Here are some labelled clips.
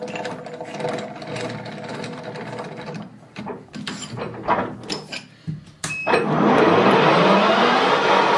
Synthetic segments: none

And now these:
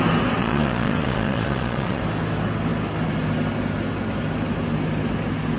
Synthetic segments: 0.4-2.0 (vocoder, Vocos)

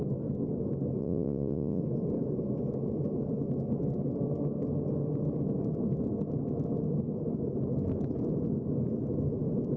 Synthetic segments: 1.0-1.8 (vocoder, Vocos)

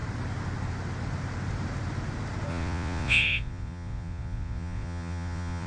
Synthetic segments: 2.5-5.7 (vocoder, Vocos)

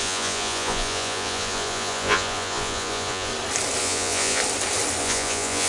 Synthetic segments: 0.0-3.3 (vocoder, Vocos); 3.8-4.4; 5.0-5.7